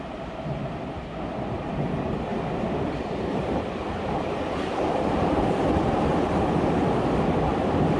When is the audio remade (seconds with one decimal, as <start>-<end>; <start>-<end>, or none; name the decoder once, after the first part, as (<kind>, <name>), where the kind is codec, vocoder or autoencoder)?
2.3-6.5 (vocoder, BigVGAN v2)